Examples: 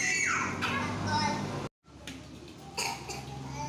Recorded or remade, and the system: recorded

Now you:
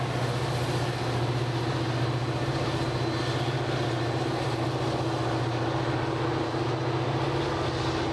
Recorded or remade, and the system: recorded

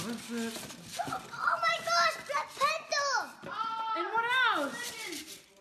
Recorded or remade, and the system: recorded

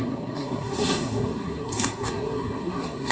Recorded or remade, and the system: remade, codec, SNAC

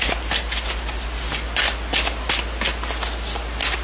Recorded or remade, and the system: recorded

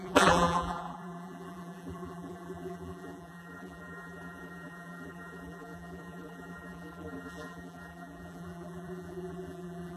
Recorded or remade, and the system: remade, vocoder, BigVGAN v2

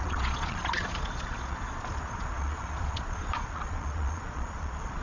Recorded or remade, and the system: remade, vocoder, Vocos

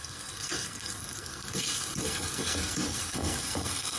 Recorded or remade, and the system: remade, codec, SNAC